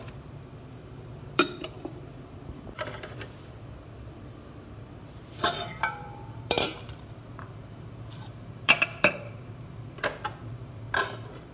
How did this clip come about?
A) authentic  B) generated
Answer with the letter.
B